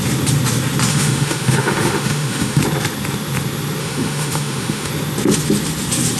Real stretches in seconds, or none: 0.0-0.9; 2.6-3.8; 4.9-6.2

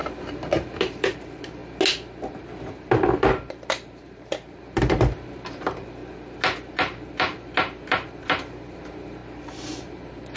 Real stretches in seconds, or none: 1.6-2.7; 6.0-6.7; 9.2-9.8

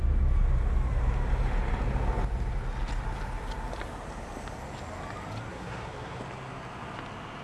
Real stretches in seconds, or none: 0.0-5.5; 6.2-7.4

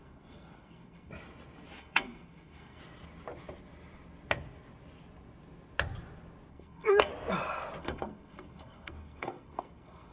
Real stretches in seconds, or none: 1.1-1.8; 2.8-6.5; 7.1-7.8